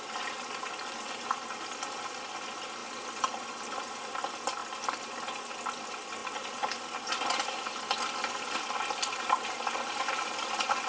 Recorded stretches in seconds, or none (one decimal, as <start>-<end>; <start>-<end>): 0.0-10.9